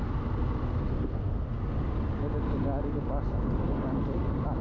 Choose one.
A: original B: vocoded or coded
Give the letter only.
A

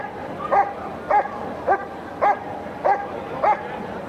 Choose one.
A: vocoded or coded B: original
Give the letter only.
B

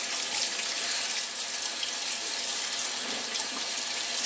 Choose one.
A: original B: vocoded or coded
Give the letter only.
A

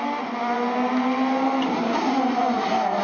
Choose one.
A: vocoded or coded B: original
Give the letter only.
B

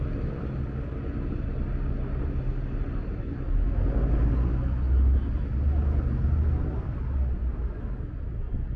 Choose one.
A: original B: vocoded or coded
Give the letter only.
A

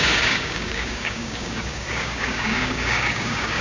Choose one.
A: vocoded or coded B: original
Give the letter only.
A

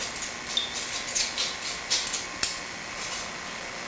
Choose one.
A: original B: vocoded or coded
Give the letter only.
A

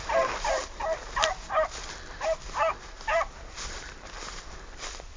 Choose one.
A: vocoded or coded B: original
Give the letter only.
B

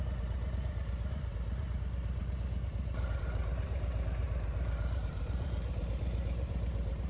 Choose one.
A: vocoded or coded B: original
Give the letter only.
A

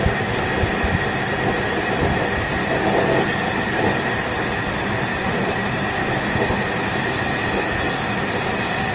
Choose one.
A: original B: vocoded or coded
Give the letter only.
A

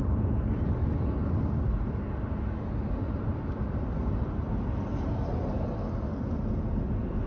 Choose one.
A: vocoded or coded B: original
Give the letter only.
B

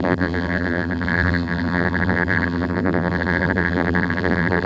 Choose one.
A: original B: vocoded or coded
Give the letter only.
B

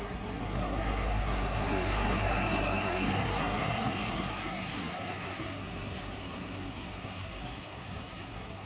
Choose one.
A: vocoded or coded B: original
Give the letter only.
A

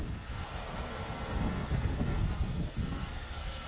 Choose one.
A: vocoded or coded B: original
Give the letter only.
A